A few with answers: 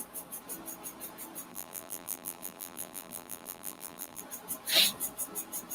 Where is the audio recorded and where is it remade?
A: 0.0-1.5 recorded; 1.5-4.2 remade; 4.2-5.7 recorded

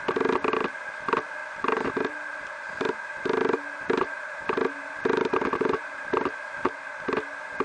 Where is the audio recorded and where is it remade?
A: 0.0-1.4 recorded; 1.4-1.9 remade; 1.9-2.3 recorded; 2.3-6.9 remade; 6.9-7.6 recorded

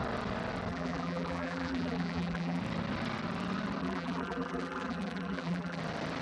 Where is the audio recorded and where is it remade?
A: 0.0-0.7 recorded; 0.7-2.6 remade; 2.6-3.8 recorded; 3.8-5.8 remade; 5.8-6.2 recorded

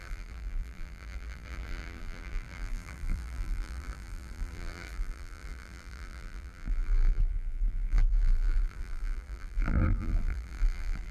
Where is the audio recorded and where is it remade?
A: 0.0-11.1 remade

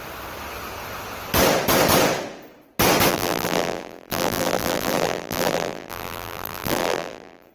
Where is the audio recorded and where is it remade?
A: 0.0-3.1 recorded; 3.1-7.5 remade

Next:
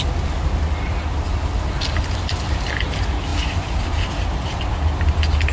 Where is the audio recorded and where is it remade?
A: 0.0-3.3 recorded; 3.3-4.7 remade; 4.7-5.5 recorded

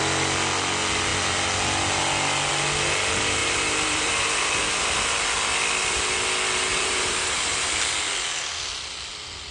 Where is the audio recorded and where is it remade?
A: 0.0-3.4 recorded; 3.4-4.1 remade; 4.1-6.7 recorded; 6.7-7.7 remade; 7.7-9.5 recorded

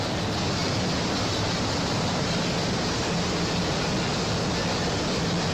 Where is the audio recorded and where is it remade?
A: 0.0-0.6 recorded; 0.6-3.9 remade; 3.9-5.5 recorded